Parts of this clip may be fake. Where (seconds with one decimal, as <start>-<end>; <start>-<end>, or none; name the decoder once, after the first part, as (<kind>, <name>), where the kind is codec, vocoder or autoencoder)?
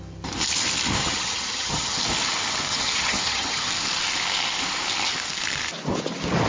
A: 1.0-2.0 (vocoder, HiFi-GAN); 2.7-3.7